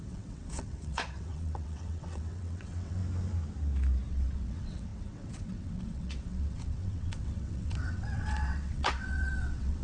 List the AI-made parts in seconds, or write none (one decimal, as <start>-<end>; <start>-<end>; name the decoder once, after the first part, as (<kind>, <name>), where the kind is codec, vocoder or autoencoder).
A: 0.0-3.0 (vocoder, WaveNeXt); 4.1-9.8